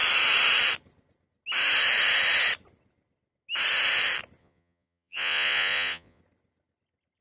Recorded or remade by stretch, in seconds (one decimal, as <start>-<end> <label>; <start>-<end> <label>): 0.0-4.4 recorded; 4.4-6.2 remade; 6.2-7.2 recorded